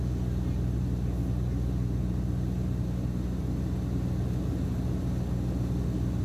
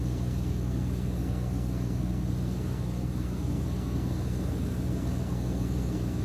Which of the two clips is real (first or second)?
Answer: first